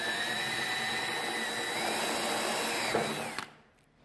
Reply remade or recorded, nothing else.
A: remade